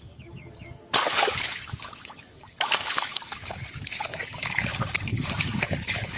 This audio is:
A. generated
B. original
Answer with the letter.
A